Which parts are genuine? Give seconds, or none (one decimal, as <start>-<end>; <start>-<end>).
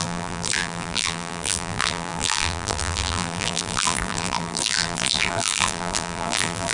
none